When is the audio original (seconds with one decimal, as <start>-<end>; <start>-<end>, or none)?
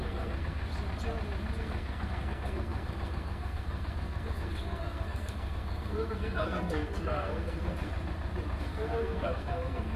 0.7-1.6; 7.9-8.6